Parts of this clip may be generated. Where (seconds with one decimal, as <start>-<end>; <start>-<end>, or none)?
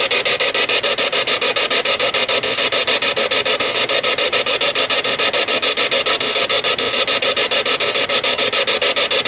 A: none